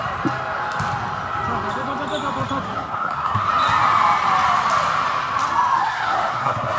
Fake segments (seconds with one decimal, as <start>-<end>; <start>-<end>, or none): 2.6-3.5; 5.8-6.8